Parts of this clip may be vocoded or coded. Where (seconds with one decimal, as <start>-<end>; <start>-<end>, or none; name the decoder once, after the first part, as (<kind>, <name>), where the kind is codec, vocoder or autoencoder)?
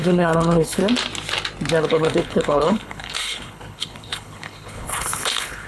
0.0-0.8 (codec, HILCodec); 1.8-5.7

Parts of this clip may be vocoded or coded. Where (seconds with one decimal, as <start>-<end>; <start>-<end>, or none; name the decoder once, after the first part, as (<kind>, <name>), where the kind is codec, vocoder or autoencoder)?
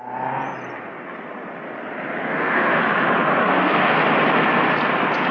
2.2-2.8 (codec, SNAC); 3.4-4.0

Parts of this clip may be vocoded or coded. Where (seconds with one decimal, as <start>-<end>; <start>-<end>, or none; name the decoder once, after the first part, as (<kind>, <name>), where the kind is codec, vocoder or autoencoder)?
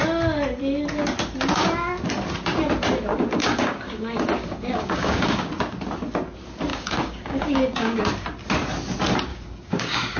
3.1-5.5 (codec, DAC); 6.7-8.0; 9.3-10.2